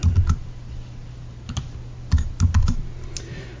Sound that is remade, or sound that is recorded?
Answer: recorded